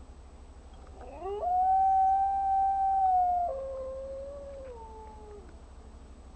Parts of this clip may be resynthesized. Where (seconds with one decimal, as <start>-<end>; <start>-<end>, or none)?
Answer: none